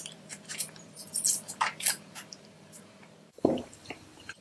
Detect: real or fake fake